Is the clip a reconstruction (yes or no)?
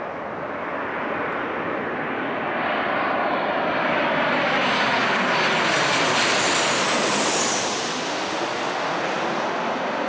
no